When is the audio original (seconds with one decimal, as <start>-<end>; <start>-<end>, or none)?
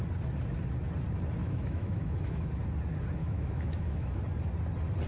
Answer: 0.0-1.4; 2.5-3.2; 4.2-5.1